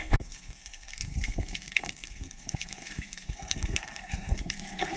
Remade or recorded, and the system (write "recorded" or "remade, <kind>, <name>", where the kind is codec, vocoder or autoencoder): remade, codec, SNAC